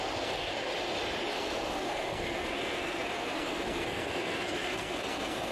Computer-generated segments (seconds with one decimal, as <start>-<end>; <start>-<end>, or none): 0.0-0.7; 1.3-5.5